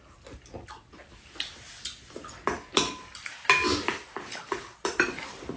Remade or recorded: recorded